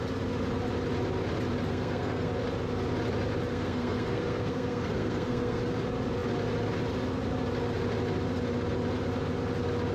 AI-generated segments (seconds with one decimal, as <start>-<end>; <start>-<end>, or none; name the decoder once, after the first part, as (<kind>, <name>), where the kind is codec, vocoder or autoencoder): 1.7-2.3 (codec, SNAC); 3.5-5.6